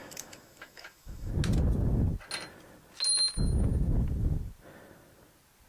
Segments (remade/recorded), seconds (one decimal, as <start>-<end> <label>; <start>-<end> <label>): 0.0-1.3 remade; 1.3-5.7 recorded